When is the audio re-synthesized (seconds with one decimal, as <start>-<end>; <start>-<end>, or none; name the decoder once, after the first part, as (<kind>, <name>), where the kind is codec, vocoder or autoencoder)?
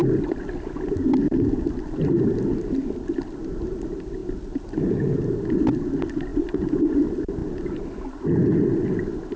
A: none